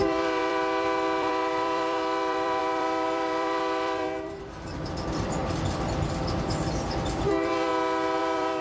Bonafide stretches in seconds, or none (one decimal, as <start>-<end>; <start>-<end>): 5.4-6.4; 7.7-8.2